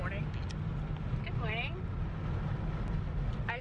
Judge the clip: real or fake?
real